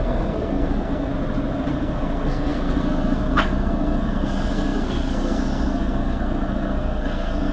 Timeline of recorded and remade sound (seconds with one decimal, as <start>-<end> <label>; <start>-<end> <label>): 0.0-1.1 remade; 1.1-1.7 recorded; 1.7-7.5 remade